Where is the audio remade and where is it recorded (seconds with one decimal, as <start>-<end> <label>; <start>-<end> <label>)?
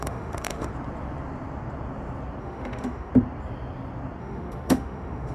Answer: 0.0-0.7 remade; 0.7-2.4 recorded; 2.4-3.1 remade; 3.1-4.2 recorded; 4.2-5.3 remade